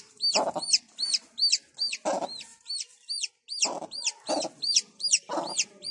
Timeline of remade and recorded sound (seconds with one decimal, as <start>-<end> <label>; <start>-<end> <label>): 0.0-5.9 recorded